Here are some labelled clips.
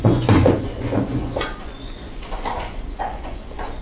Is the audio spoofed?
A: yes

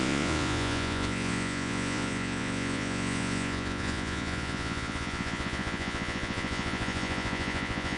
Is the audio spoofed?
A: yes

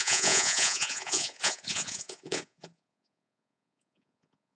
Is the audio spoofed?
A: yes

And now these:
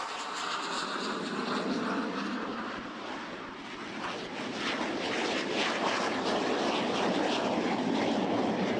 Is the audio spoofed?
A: no